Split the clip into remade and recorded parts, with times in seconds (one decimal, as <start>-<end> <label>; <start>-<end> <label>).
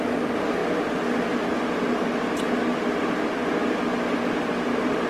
0.0-5.1 recorded